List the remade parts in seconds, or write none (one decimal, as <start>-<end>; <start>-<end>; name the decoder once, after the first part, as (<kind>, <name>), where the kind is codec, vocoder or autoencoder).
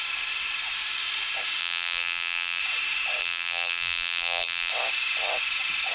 1.6-2.6 (vocoder, BigVGAN v2); 3.2-4.7